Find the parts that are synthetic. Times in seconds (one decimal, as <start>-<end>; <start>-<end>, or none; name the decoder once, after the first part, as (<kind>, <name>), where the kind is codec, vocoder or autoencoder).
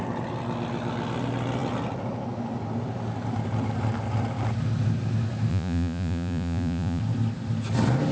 5.5-7.0 (vocoder, Vocos)